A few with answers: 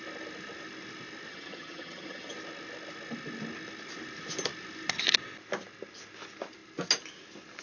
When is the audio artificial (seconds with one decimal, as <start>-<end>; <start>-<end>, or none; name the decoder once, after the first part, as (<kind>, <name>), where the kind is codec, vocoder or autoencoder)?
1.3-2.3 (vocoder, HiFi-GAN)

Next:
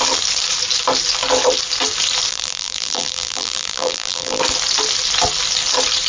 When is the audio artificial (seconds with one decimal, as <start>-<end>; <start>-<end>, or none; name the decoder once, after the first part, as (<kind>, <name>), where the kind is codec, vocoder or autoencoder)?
2.3-4.4 (vocoder, BigVGAN v2)

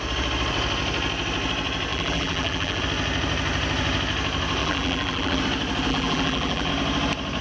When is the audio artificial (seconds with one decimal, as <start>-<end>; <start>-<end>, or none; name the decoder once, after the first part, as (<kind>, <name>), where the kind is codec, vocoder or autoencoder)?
1.9-2.8 (vocoder, BigVGAN v2); 4.6-5.4; 5.9-6.7

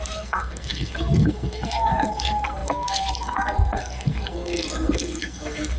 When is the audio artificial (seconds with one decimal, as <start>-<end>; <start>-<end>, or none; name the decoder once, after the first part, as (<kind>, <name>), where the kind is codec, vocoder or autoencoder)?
0.0-5.8 (codec, SNAC)

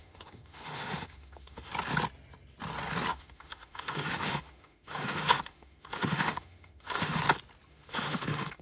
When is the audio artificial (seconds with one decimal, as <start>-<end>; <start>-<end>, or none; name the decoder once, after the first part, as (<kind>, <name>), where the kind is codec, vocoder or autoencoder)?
0.0-1.7 (autoencoder, DAC-VAE); 3.1-7.2; 7.7-8.6

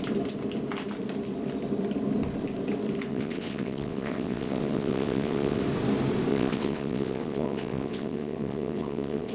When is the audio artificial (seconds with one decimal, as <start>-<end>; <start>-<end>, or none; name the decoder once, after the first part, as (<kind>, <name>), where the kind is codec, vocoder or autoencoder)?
3.1-5.6 (vocoder, WaveNeXt); 6.3-9.3

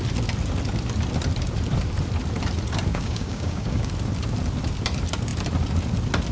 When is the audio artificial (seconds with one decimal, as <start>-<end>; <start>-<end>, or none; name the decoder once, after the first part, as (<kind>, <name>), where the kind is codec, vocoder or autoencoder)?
2.9-3.9 (codec, DAC)

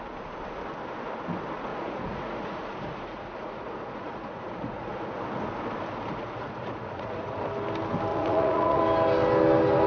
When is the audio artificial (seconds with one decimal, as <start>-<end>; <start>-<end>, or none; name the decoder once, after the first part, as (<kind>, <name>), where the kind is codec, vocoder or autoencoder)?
1.7-5.1 (vocoder, Vocos); 6.1-7.4; 8.1-8.8